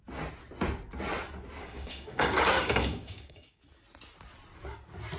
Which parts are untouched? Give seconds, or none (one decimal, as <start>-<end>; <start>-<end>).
0.0-1.6; 3.6-5.2

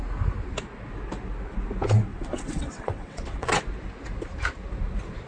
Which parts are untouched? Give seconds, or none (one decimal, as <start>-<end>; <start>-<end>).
0.0-2.1; 3.6-5.3

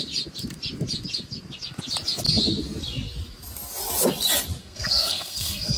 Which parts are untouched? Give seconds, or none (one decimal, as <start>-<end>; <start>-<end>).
0.0-4.6

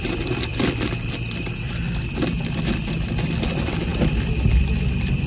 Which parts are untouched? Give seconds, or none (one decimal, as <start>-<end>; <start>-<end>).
0.0-5.3